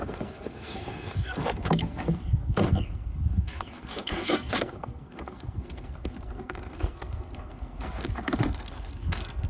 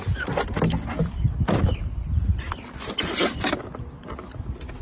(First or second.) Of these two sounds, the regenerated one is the first